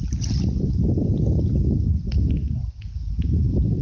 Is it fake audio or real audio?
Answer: real